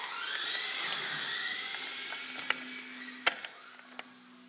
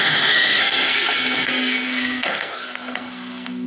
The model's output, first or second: second